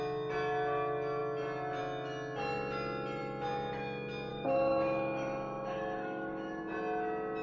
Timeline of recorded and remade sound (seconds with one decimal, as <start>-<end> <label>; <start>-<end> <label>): 0.0-4.3 recorded; 4.3-6.6 remade; 6.6-7.4 recorded